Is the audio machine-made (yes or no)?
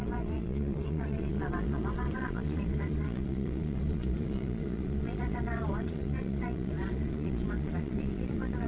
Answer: yes